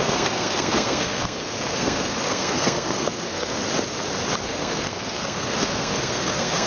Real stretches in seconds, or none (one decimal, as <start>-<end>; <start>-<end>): 3.6-4.4